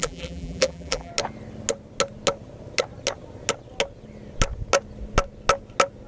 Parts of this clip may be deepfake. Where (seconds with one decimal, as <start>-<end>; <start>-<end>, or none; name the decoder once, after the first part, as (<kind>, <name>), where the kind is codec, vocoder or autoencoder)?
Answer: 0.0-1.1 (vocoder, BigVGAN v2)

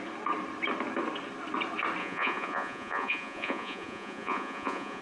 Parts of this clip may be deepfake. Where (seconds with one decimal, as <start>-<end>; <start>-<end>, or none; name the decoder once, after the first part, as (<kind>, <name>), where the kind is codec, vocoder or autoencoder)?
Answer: 2.0-5.0 (vocoder, Vocos)

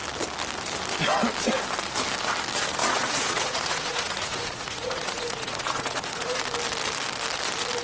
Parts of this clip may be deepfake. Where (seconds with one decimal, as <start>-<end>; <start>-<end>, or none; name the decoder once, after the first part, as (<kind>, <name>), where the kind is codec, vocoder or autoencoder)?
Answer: 2.8-6.4 (vocoder, Vocos)

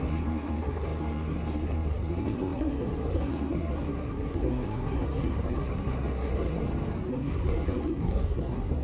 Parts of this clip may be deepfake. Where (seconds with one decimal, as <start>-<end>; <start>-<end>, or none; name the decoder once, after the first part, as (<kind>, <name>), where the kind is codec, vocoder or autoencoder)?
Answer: 0.0-6.6 (codec, SNAC); 7.1-8.8

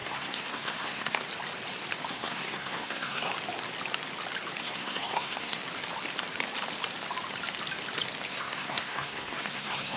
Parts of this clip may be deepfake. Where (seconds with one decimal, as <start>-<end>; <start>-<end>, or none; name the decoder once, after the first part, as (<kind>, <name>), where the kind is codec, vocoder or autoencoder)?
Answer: 0.0-1.2 (codec, SNAC); 2.1-3.3; 4.6-5.6; 8.3-10.0

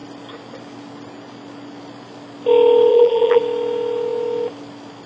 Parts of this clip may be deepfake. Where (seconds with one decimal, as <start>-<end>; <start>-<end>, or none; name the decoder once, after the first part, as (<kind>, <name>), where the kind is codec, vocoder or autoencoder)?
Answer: 2.9-3.4 (vocoder, BigVGAN v2)

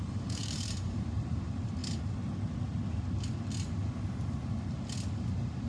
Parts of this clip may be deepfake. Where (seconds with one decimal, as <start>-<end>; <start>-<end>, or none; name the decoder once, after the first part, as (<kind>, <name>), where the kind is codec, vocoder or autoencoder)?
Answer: 0.0-1.8 (vocoder, BigVGAN v2); 5.2-5.7